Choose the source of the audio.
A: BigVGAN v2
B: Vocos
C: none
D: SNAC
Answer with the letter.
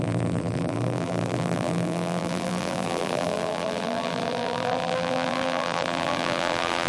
A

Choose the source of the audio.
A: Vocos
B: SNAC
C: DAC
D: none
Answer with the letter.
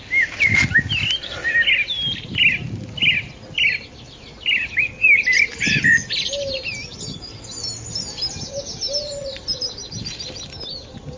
D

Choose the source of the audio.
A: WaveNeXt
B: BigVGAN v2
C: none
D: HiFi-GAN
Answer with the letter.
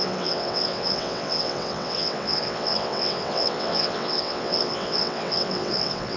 A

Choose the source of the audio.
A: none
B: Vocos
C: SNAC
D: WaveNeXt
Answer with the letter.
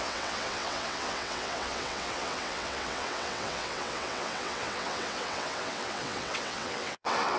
D